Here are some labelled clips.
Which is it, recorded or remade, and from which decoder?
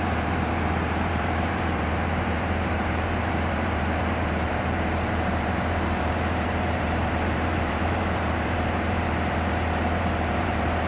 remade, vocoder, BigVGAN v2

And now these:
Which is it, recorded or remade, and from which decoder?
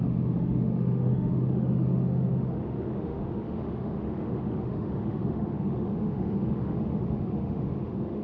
remade, autoencoder, DAC-VAE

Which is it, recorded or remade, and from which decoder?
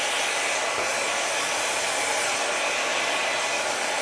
recorded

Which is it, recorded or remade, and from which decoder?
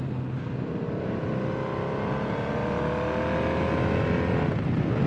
recorded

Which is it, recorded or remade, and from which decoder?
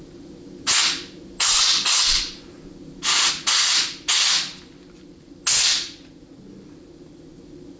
recorded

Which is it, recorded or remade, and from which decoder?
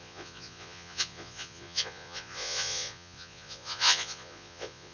remade, vocoder, Vocos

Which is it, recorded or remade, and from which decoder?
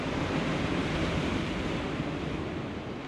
recorded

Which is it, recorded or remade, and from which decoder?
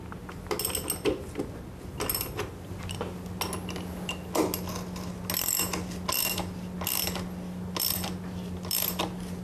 recorded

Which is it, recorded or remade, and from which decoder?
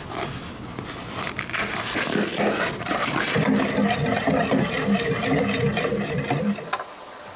recorded